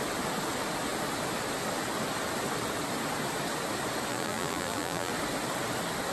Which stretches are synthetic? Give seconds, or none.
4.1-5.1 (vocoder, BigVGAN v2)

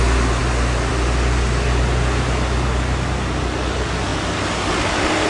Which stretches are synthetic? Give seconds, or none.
4.1-4.7 (vocoder, BigVGAN v2)

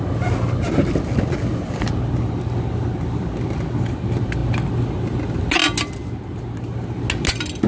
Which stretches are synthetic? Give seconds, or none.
none